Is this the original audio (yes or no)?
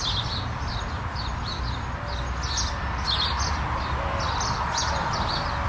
yes